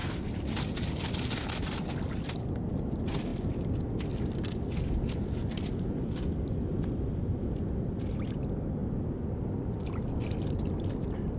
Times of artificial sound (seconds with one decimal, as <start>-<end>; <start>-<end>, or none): none